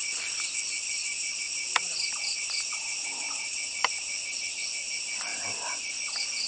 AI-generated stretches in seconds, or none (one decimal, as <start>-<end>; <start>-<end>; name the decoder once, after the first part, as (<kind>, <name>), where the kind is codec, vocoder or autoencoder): 5.3-6.5 (vocoder, BigVGAN v2)